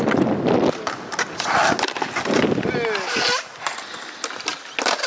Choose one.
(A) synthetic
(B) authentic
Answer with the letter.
B